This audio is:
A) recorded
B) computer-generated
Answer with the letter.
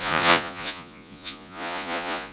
B